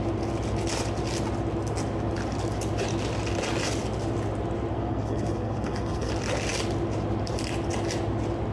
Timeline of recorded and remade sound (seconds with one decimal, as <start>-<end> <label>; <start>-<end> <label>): 0.0-4.7 recorded; 4.7-6.1 remade; 6.1-8.5 recorded